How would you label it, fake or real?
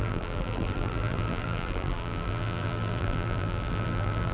fake